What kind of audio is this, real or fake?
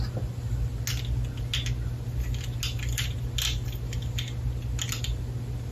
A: real